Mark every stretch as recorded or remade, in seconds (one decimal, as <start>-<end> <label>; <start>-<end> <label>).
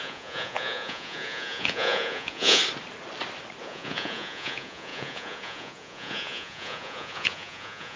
0.0-2.6 remade; 2.6-3.6 recorded; 3.6-8.0 remade